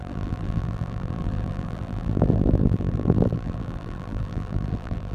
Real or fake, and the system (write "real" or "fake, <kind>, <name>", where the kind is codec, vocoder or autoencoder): fake, vocoder, BigVGAN v2